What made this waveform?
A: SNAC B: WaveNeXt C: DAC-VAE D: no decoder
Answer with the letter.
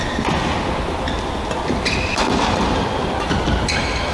D